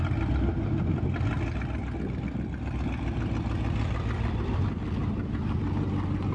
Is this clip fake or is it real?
real